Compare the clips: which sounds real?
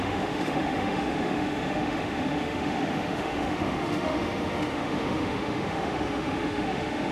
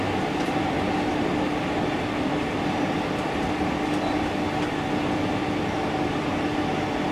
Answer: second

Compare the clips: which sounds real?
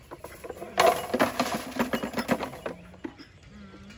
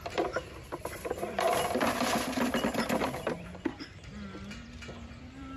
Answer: first